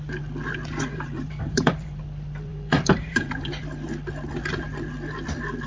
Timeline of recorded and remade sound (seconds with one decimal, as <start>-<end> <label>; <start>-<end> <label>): 0.0-0.9 recorded; 0.9-2.0 remade; 2.0-2.5 recorded; 2.5-3.6 remade; 3.6-5.7 recorded